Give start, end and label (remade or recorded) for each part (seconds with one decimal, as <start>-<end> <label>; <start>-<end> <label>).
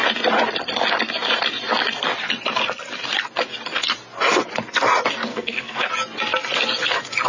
0.0-5.3 recorded; 5.3-5.9 remade; 5.9-7.3 recorded